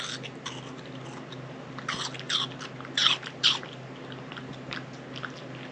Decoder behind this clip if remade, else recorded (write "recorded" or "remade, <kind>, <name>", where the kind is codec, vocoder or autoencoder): recorded